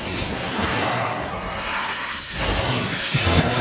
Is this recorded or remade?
remade